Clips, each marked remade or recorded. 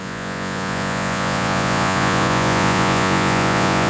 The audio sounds remade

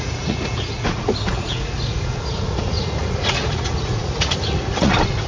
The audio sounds remade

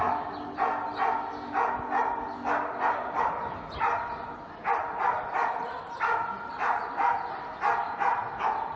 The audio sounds recorded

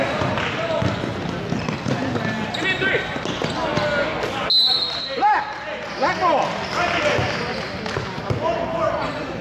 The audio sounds recorded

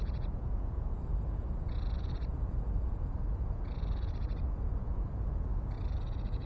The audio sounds remade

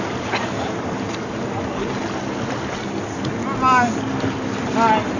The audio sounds recorded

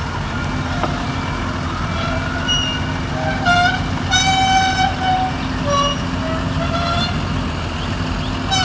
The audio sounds recorded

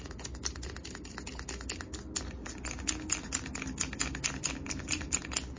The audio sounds recorded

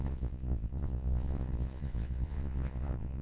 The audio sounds remade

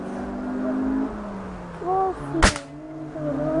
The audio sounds recorded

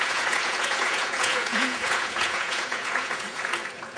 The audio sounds remade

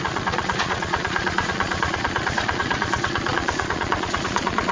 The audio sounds remade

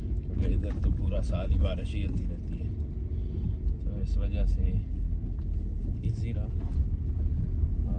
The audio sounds recorded